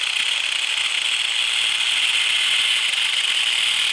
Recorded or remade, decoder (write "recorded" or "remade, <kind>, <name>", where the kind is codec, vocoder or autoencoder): recorded